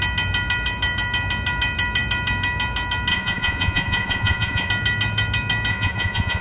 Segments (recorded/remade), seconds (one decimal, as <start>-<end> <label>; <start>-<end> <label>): 0.0-3.1 recorded; 3.1-4.7 remade; 4.7-5.7 recorded; 5.7-6.4 remade